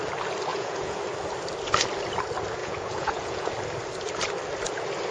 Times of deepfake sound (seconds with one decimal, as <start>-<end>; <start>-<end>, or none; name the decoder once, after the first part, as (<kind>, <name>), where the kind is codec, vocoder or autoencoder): 0.5-1.0 (vocoder, Vocos); 2.6-3.5